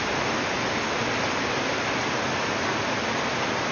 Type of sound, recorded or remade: recorded